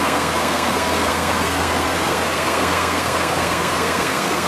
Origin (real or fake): fake